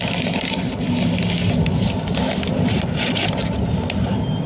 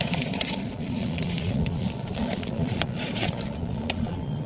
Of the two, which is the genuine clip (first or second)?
first